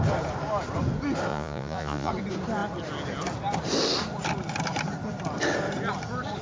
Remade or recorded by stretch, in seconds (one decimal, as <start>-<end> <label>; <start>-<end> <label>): 0.0-1.3 recorded; 1.3-2.1 remade; 2.1-6.4 recorded